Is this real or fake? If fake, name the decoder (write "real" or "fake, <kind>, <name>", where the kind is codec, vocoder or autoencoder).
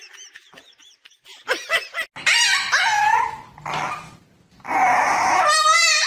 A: real